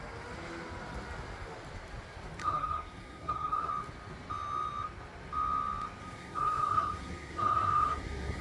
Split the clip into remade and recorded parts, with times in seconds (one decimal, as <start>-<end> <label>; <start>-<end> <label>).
0.0-2.4 recorded; 2.4-3.7 remade; 3.7-6.0 recorded; 6.0-8.4 remade